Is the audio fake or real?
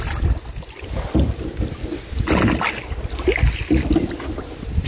real